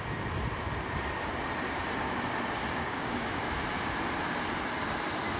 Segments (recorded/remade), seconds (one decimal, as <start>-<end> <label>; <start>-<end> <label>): 0.0-2.7 recorded; 2.7-3.5 remade; 3.5-5.4 recorded